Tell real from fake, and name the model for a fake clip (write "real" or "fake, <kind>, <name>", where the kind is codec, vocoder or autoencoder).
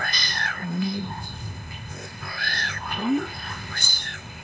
fake, codec, ZipCodec